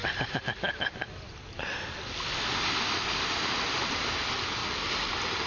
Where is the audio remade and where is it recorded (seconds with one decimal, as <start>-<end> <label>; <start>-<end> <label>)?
0.0-5.5 recorded